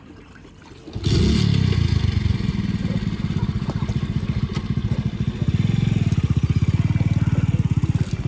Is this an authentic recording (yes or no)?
yes